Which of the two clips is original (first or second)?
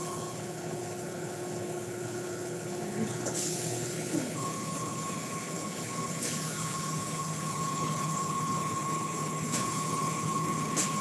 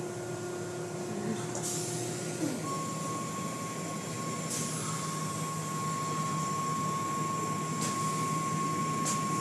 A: second